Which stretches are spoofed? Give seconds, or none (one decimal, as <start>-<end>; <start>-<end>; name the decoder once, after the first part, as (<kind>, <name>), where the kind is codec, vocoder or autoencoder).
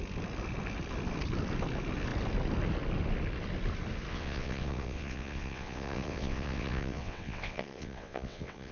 4.1-8.7 (vocoder, WaveNeXt)